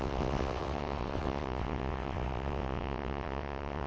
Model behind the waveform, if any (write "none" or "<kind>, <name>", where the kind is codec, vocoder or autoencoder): vocoder, WaveNeXt